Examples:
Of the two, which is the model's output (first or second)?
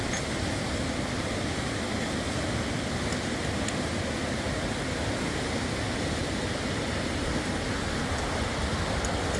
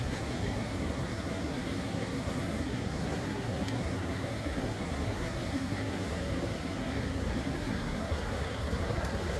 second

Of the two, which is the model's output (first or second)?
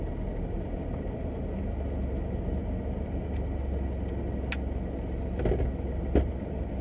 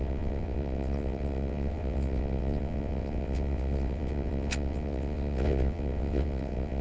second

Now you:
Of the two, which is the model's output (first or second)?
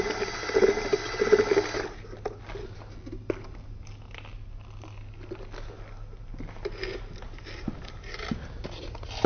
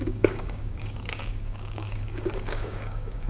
second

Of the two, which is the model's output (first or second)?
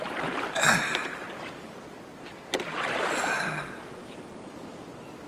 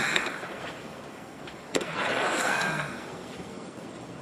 second